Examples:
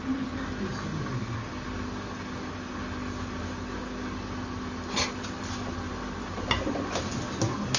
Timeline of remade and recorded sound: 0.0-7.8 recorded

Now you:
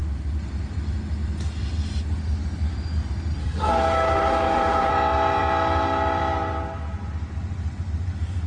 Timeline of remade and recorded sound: 0.0-3.4 recorded; 3.4-4.9 remade; 4.9-8.5 recorded

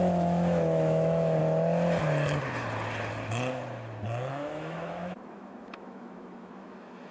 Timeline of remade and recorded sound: 0.0-1.4 remade; 1.4-4.3 recorded; 4.3-7.1 remade

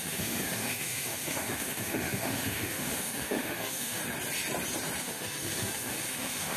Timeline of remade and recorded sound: 0.0-4.0 remade; 4.0-5.0 recorded; 5.0-6.6 remade

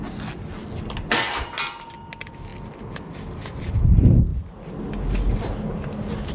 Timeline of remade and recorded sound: 0.0-6.3 recorded

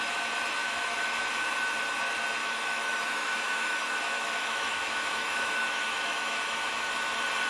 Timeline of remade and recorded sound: 0.0-0.6 recorded; 0.6-1.2 remade; 1.2-2.4 recorded; 2.4-6.9 remade; 6.9-7.5 recorded